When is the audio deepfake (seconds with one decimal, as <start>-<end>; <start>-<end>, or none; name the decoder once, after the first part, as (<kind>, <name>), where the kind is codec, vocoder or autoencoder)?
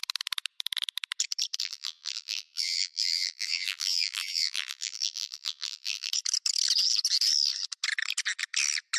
1.6-6.1 (vocoder, BigVGAN v2)